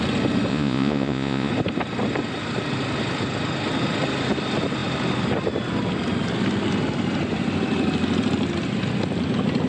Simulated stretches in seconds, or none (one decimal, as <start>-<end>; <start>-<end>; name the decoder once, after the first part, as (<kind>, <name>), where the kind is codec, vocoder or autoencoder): 0.5-1.5 (vocoder, Vocos)